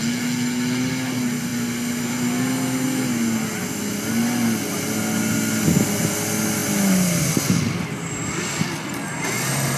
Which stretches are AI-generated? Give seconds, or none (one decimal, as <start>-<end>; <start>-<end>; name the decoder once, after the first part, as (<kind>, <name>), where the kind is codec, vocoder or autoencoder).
none